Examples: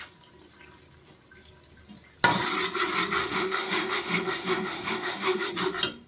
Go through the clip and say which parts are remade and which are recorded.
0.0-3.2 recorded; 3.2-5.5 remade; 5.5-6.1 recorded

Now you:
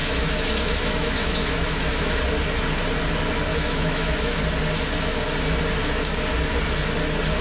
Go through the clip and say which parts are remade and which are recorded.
0.0-2.2 remade; 2.2-3.5 recorded; 3.5-4.4 remade; 4.4-7.4 recorded

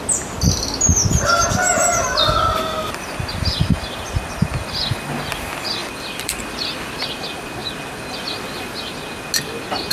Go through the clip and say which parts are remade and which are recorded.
0.0-5.8 recorded; 5.8-6.4 remade; 6.4-9.9 recorded

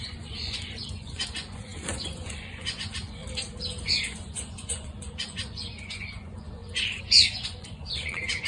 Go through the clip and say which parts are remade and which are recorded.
0.0-3.2 remade; 3.2-3.9 recorded; 3.9-8.5 remade